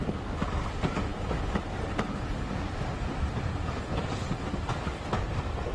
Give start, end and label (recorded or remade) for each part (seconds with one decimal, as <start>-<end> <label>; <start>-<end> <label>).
0.0-5.7 recorded